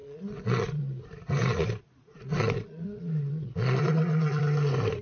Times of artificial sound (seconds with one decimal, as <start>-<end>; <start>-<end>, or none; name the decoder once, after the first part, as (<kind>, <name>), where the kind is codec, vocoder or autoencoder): 0.0-0.8 (vocoder, Vocos); 1.4-4.4